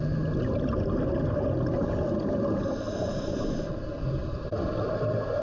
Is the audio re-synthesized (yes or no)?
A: no